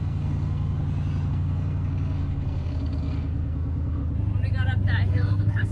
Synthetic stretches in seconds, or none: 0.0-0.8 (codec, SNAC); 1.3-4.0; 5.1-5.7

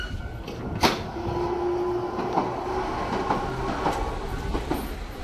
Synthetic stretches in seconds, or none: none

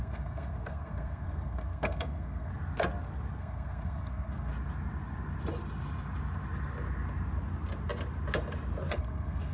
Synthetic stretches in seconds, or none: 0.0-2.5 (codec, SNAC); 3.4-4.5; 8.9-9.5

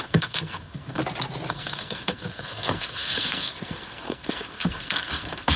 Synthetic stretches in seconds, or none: 0.0-1.0 (codec, SNAC); 1.5-5.6

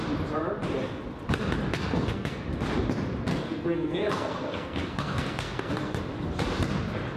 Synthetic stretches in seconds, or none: 1.7-2.4 (codec, SNAC); 3.3-6.0

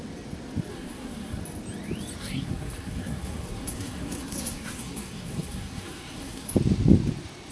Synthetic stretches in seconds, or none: 0.7-1.4 (codec, SNAC); 2.2-6.5